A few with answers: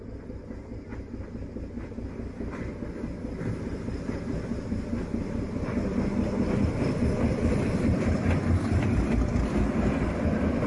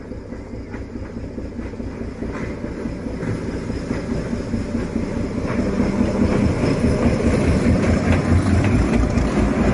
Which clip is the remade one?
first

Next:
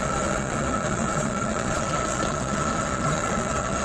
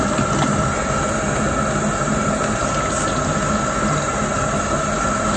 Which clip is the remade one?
first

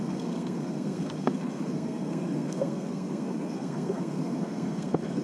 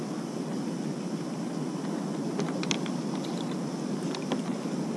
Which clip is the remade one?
first